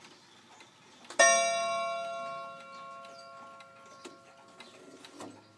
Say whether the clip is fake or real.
real